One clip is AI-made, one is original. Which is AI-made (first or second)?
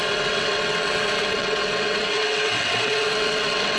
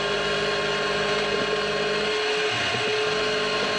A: first